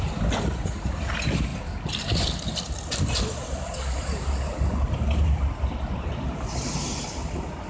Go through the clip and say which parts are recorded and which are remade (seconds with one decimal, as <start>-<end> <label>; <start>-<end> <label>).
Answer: 0.0-7.7 recorded